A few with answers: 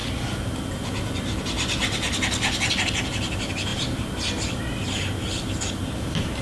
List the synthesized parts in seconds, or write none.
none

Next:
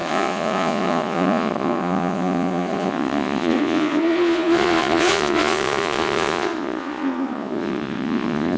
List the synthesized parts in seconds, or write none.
0.0-8.6

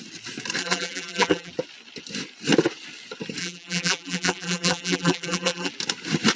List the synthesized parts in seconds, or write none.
0.6-1.5; 3.4-5.7

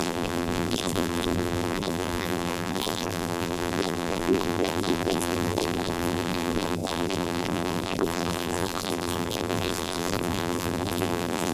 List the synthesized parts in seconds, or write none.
0.0-11.5

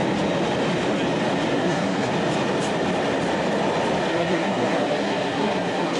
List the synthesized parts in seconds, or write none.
1.5-2.1; 4.1-6.0

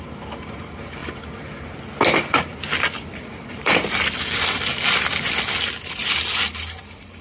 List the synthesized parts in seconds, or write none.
1.0-1.8; 2.5-4.4

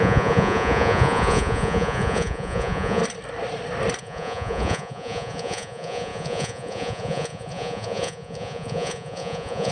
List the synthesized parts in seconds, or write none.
0.0-3.0; 4.0-9.7